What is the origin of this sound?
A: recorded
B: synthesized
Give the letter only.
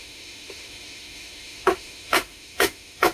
B